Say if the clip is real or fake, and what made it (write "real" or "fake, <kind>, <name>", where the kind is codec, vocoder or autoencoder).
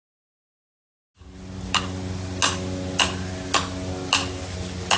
real